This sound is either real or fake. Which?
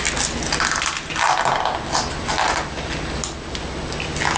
real